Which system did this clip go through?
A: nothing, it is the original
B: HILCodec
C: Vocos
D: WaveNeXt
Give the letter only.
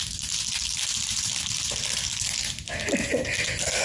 A